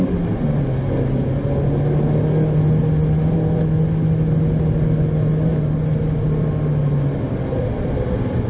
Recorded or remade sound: recorded